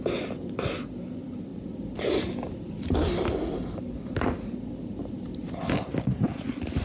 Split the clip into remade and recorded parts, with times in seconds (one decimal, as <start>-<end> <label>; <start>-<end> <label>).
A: 0.0-1.5 recorded; 1.5-5.6 remade; 5.6-6.8 recorded